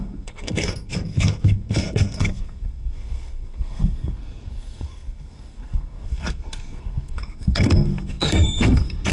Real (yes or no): no